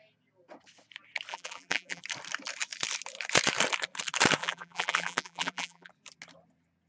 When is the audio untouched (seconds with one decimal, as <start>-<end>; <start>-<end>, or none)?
0.0-1.3; 2.0-4.4; 5.9-6.9